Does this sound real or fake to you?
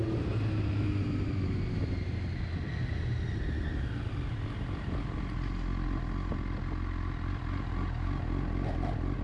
real